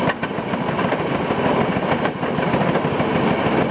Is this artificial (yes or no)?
yes